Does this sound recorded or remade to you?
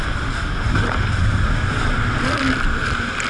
recorded